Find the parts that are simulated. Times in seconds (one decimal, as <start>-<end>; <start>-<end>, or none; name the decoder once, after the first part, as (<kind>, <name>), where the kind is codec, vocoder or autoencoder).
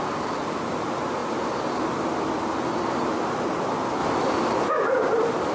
none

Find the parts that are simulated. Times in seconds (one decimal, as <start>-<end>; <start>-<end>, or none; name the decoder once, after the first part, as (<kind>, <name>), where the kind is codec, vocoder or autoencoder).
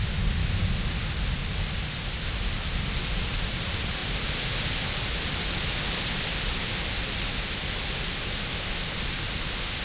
0.0-4.0 (vocoder, BigVGAN v2); 5.0-9.8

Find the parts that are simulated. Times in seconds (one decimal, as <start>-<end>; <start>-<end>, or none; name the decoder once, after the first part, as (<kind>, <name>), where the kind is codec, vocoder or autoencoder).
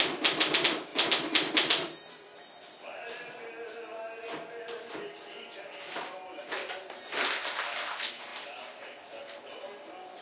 0.9-3.3 (vocoder, BigVGAN v2); 8.3-9.2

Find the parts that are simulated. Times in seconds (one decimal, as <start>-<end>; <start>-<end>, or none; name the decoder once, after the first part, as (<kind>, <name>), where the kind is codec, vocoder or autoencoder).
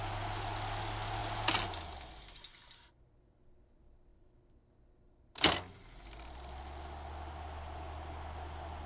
none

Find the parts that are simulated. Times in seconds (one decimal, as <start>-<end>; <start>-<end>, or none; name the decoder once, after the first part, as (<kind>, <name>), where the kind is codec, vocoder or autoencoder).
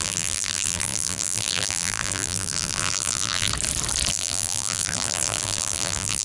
0.0-3.5 (vocoder, BigVGAN v2); 4.1-6.2